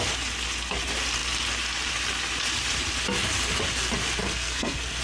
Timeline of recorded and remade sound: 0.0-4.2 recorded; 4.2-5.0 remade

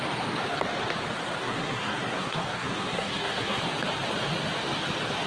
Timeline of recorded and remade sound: 0.0-1.4 recorded; 1.4-3.6 remade; 3.6-5.3 recorded

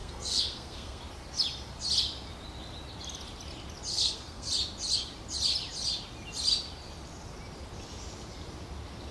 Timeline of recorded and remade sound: 0.0-1.0 remade; 1.0-3.9 recorded; 3.9-4.5 remade; 4.5-9.1 recorded

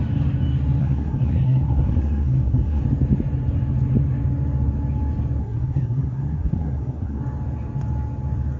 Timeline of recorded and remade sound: 0.0-0.8 recorded; 0.8-2.8 remade; 2.8-5.4 recorded; 5.4-7.2 remade; 7.2-8.6 recorded

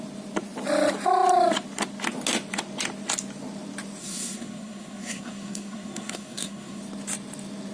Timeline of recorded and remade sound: 0.0-4.0 recorded; 4.0-6.8 remade; 6.8-7.7 recorded

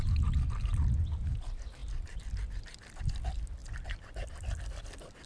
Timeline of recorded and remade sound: 0.0-5.3 recorded